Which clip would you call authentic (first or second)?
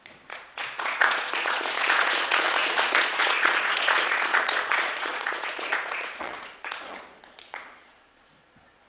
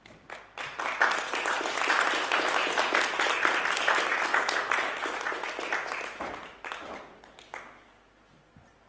second